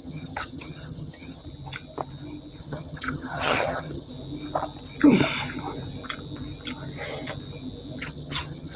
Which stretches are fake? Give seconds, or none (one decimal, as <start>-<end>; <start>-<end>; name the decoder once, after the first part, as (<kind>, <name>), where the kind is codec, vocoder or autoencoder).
0.0-1.4 (vocoder, HiFi-GAN); 2.6-4.1; 8.0-8.8